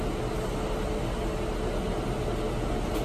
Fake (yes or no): no